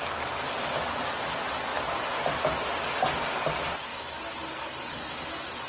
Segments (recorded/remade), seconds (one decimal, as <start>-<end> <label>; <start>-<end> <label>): 0.0-5.7 recorded